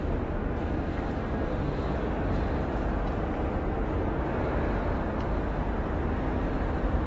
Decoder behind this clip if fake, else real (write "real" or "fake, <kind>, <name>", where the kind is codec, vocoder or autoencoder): real